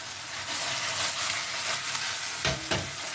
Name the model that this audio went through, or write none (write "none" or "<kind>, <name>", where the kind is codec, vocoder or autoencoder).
none